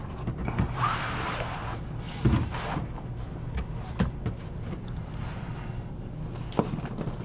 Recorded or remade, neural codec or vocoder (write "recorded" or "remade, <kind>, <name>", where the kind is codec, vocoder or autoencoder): recorded